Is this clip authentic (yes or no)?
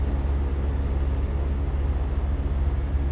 yes